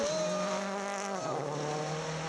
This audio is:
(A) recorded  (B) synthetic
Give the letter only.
A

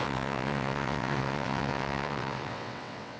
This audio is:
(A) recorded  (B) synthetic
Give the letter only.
B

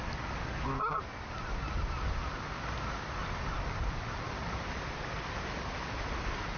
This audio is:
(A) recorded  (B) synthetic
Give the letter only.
A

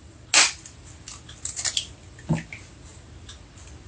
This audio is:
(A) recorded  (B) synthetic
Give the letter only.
A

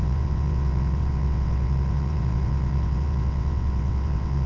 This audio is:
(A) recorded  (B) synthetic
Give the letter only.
B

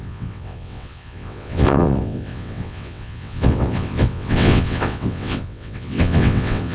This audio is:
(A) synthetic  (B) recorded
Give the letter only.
A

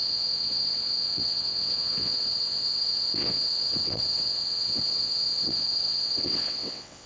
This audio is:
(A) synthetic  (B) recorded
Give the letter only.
A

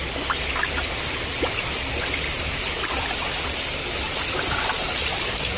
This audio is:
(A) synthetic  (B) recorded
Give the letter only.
B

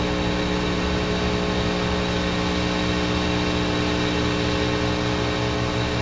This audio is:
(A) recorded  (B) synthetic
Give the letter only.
A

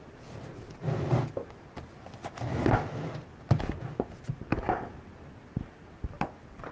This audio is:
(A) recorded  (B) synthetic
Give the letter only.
A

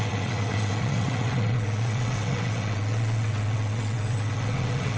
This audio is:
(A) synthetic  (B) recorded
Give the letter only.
A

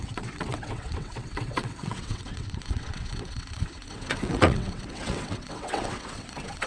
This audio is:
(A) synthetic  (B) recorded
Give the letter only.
A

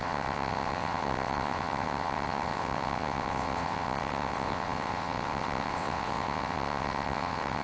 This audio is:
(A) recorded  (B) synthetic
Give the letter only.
B